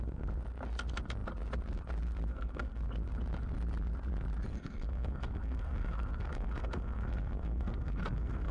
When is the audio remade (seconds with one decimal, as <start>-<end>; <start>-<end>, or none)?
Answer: 2.3-2.8; 4.5-8.5